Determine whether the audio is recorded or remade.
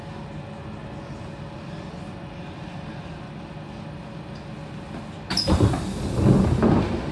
recorded